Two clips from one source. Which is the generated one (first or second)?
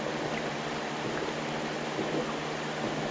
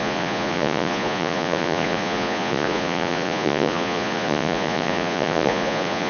second